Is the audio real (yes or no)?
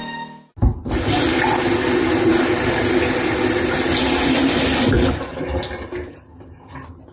yes